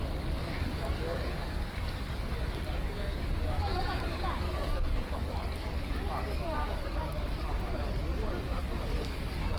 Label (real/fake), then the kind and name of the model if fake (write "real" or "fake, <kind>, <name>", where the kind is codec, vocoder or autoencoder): fake, codec, DAC